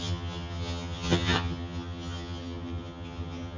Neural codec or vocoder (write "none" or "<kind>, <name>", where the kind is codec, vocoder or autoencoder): vocoder, HiFi-GAN